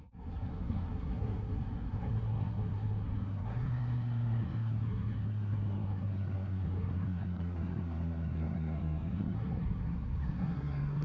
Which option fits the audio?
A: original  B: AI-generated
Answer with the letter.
B